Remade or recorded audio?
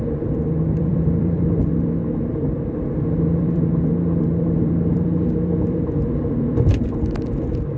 remade